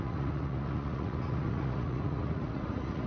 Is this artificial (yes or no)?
yes